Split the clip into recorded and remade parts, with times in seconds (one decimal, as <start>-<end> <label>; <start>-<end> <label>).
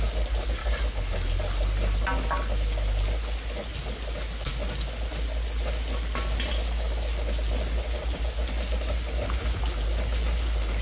0.0-0.6 recorded; 0.6-1.4 remade; 1.4-10.8 recorded